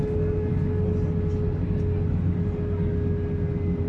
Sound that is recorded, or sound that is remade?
recorded